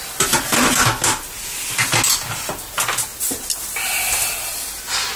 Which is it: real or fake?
real